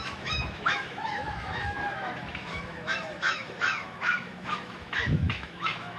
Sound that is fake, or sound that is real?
fake